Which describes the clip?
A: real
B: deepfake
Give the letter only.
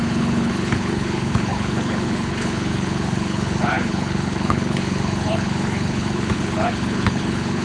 B